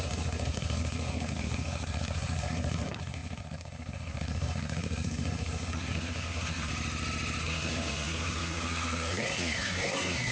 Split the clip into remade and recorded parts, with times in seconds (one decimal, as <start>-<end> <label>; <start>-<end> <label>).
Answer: 0.0-6.7 remade; 6.7-7.4 recorded; 7.4-10.3 remade